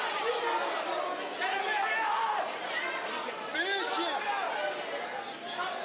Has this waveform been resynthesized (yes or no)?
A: no